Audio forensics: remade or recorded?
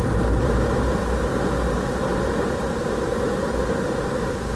recorded